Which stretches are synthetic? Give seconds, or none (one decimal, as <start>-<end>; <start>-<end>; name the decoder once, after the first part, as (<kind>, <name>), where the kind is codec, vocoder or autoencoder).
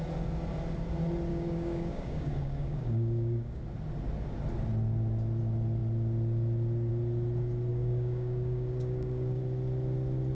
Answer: 1.3-3.6 (codec, DAC); 7.7-9.4